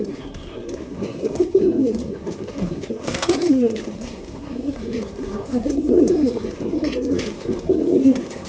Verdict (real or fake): fake